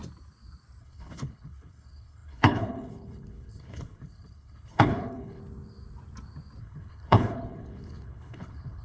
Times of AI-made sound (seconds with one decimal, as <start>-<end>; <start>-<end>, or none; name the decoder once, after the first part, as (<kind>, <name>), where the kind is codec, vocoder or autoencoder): 0.8-5.4 (codec, HILCodec); 6.6-8.8

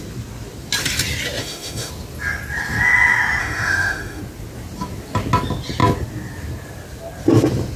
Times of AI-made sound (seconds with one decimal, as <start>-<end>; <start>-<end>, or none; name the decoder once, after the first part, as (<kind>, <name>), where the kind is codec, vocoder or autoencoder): 1.4-1.9 (autoencoder, DAC-VAE); 3.4-4.2

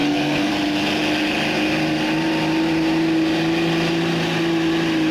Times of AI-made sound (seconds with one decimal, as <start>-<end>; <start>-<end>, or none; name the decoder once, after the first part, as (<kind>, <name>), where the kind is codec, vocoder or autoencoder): 0.0-0.5 (codec, SNAC)

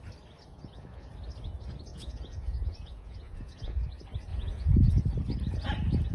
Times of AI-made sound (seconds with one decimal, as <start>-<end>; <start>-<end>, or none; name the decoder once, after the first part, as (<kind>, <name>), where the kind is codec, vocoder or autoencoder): 0.5-1.1 (vocoder, Vocos); 1.9-3.8; 4.3-5.0

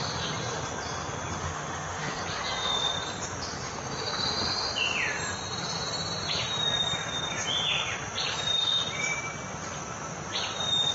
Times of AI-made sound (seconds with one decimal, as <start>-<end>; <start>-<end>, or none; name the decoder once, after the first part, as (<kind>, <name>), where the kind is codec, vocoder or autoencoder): 1.4-2.2 (autoencoder, DAC-VAE)

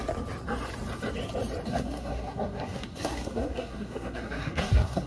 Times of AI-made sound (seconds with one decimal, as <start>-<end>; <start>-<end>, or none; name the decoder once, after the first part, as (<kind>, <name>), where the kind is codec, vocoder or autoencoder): 1.7-5.1 (codec, SNAC)

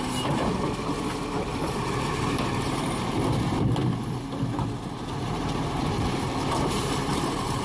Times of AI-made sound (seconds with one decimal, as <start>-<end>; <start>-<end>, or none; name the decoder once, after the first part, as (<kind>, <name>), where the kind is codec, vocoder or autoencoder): 1.5-3.2 (vocoder, BigVGAN v2); 3.8-7.6